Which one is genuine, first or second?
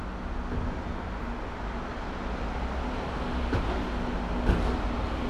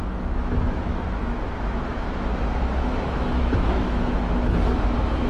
first